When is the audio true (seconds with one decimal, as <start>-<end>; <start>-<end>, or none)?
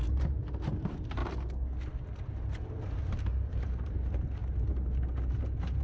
1.2-2.2; 4.4-5.8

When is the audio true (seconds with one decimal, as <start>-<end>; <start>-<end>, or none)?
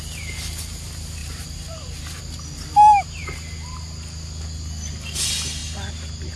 0.0-1.2; 2.2-6.4